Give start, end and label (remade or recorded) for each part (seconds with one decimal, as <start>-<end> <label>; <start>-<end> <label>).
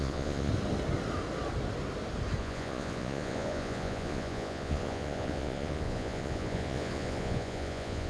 0.0-0.5 remade; 0.5-2.4 recorded; 2.4-8.1 remade